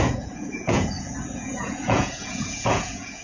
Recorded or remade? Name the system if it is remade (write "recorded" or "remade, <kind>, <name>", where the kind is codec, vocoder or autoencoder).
remade, vocoder, Vocos